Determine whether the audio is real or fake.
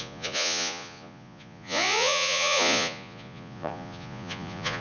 fake